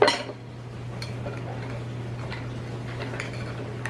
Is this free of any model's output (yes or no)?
yes